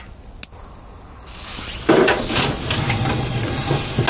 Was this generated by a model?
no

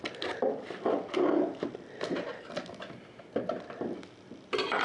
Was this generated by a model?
no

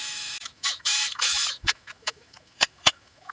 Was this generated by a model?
yes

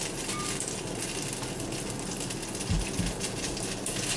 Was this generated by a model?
no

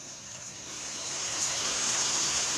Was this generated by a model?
yes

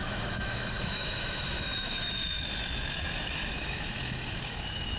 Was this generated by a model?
yes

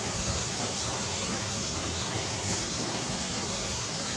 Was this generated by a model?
yes